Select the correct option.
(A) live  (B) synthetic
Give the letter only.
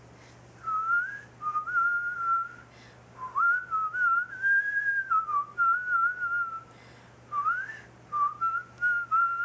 A